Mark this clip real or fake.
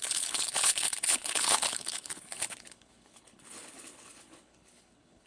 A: fake